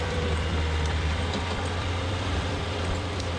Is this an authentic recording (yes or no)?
no